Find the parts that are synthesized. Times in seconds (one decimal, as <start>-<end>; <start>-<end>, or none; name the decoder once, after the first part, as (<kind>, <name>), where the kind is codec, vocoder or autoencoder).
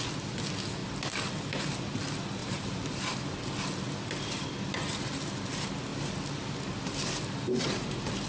2.4-3.4 (vocoder, BigVGAN v2)